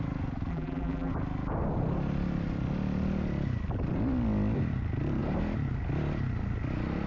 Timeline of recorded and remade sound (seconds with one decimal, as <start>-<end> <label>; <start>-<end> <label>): 0.0-0.5 recorded; 0.5-1.1 remade; 1.1-7.1 recorded